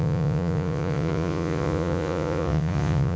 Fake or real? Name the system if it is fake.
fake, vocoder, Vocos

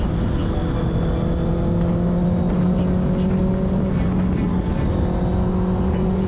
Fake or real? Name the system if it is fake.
real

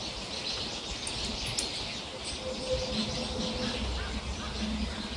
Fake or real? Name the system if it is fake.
real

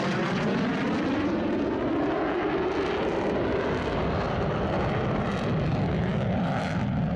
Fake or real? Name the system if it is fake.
real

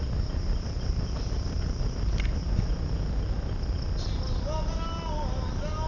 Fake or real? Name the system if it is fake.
real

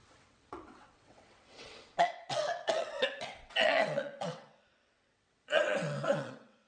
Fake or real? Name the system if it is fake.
fake, vocoder, WaveNeXt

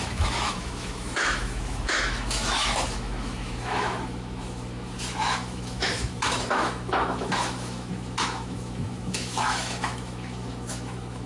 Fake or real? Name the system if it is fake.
fake, autoencoder, DAC-VAE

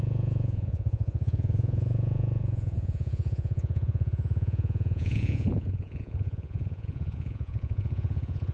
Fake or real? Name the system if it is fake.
fake, vocoder, Vocos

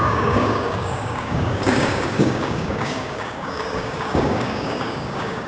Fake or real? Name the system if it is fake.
fake, codec, DAC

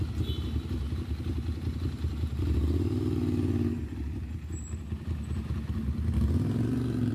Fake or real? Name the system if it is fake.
real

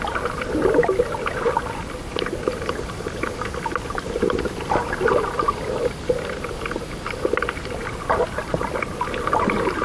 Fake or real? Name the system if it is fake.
fake, vocoder, BigVGAN v2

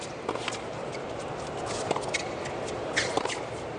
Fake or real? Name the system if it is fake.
real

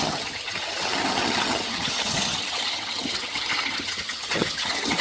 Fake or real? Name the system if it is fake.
fake, vocoder, HiFi-GAN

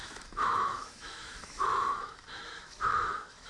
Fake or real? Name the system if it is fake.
fake, autoencoder, DAC-VAE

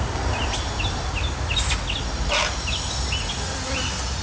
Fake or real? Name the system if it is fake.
real